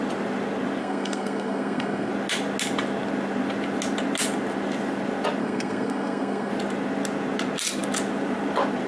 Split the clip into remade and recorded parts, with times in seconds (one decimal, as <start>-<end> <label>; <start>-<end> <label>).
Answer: 0.0-0.8 recorded; 0.8-2.1 remade; 2.1-5.4 recorded; 5.4-6.5 remade; 6.5-8.9 recorded